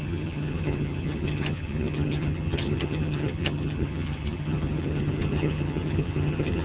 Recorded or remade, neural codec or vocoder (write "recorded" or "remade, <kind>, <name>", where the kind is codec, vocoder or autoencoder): remade, vocoder, HiFi-GAN